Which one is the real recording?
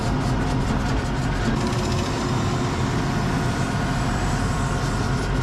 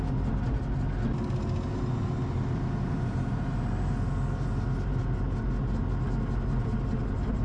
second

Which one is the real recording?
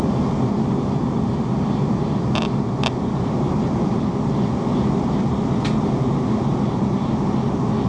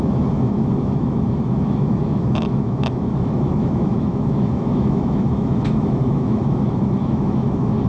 first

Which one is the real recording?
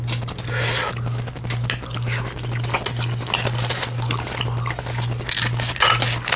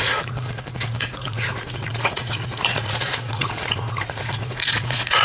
first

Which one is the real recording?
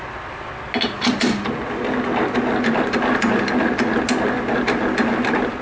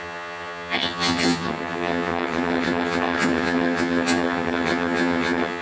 first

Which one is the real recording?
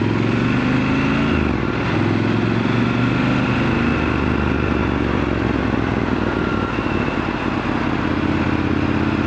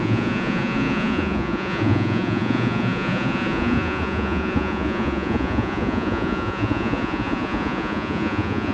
first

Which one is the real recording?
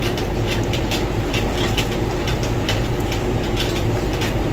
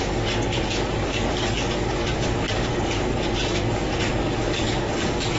first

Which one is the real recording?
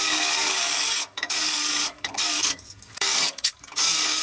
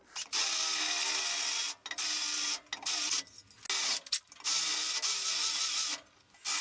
second